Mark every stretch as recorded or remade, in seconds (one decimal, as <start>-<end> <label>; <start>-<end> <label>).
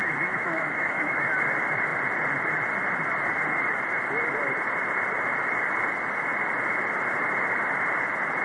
0.0-1.2 remade; 1.2-8.4 recorded